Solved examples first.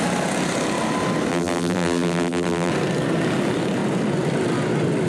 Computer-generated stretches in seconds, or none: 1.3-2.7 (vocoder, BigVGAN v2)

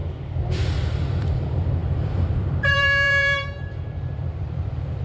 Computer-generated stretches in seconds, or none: 0.0-5.0 (vocoder, BigVGAN v2)

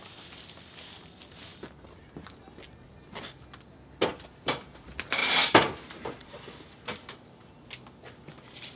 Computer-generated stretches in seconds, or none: none

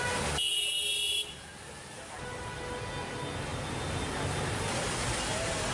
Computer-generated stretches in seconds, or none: 0.5-1.5 (vocoder, BigVGAN v2)

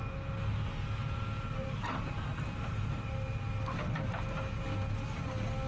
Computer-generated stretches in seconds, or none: 1.0-4.2 (vocoder, BigVGAN v2)

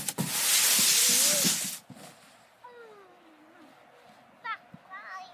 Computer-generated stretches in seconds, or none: none

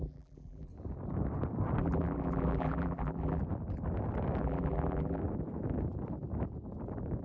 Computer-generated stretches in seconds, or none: 0.0-0.7 (vocoder, BigVGAN v2); 1.8-3.4; 4.4-5.2

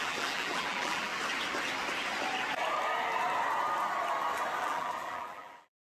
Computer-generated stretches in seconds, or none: 0.0-1.1 (vocoder, BigVGAN v2); 4.6-5.8